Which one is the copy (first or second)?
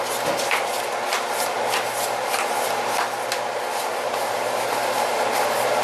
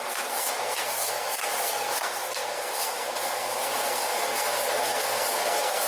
second